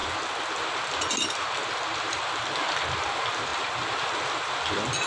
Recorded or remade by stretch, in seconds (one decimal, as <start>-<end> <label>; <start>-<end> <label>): 0.0-5.1 recorded